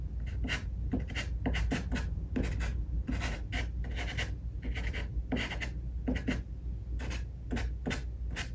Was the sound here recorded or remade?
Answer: recorded